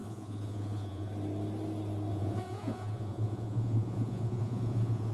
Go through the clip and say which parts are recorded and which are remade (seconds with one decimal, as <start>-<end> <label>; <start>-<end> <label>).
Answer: 0.0-1.1 remade; 1.1-2.1 recorded; 2.1-5.1 remade